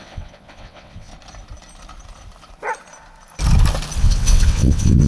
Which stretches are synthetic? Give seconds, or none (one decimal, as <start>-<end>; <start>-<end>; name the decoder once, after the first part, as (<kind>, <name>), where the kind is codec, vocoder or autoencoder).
0.0-1.1 (vocoder, WaveNeXt); 4.0-5.1